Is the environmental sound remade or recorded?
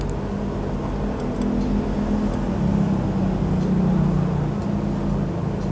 recorded